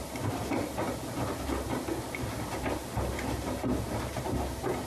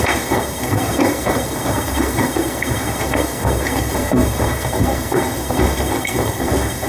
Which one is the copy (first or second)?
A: second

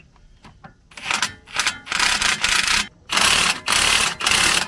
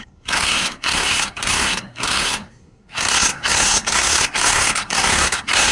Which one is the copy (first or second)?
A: second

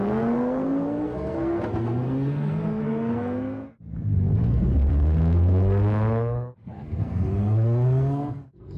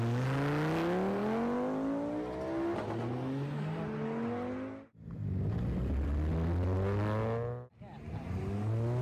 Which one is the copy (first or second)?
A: first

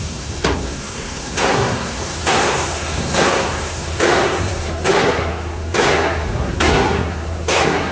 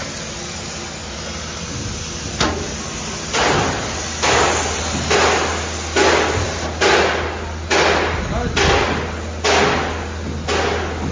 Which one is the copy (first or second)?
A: first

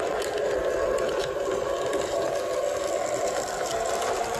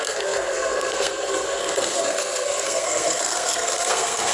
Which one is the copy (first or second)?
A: second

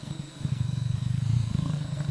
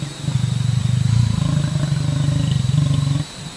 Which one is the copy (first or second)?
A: first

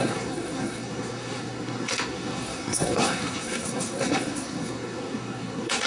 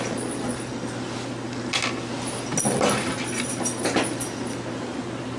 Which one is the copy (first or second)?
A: first